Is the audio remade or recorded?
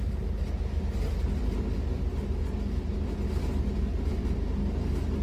recorded